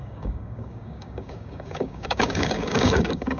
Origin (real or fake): fake